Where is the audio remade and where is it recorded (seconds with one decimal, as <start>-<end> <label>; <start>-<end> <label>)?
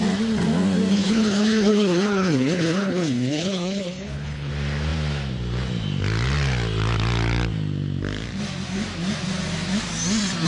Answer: 0.0-0.9 recorded; 0.9-4.5 remade; 4.5-10.5 recorded